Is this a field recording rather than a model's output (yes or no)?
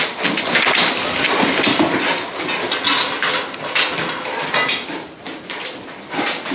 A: yes